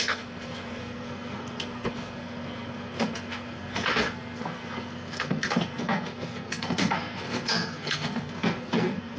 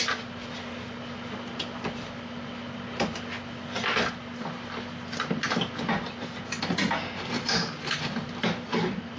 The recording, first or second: second